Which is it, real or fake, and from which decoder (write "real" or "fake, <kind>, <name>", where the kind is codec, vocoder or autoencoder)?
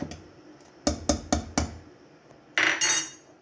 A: real